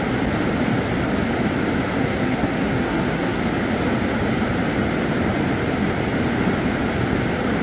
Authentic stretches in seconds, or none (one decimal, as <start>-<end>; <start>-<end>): 0.0-2.0; 3.4-7.6